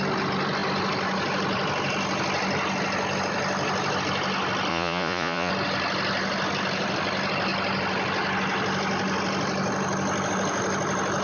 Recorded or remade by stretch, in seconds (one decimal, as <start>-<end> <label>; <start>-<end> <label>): 0.0-4.7 recorded; 4.7-5.5 remade; 5.5-11.2 recorded